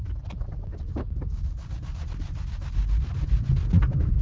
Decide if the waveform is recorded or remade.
recorded